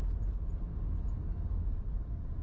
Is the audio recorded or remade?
recorded